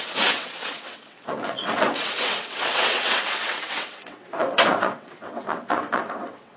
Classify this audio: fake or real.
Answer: fake